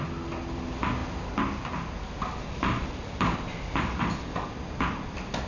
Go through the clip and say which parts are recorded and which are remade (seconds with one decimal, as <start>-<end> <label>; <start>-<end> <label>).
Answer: 0.0-5.5 recorded